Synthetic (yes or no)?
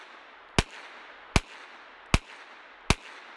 no